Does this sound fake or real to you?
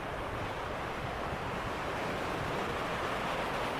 real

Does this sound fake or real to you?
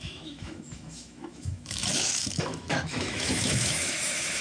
fake